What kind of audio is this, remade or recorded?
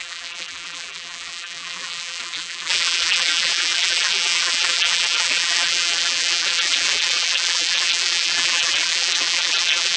remade